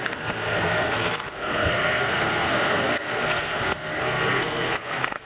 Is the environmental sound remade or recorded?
remade